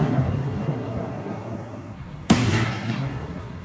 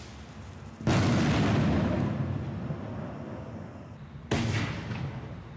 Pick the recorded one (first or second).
second